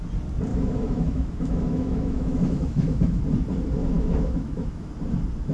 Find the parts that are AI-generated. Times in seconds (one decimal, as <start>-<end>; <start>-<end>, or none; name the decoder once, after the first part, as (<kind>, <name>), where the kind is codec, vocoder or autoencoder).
0.5-3.2 (autoencoder, DAC-VAE); 3.8-4.9